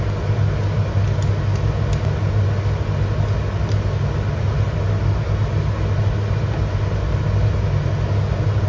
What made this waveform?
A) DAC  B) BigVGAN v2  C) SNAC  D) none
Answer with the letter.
D